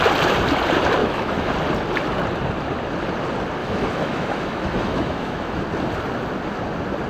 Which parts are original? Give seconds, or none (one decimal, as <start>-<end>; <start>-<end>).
0.0-1.0; 1.5-3.6; 5.6-7.1